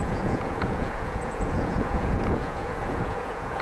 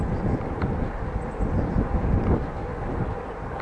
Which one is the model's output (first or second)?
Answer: first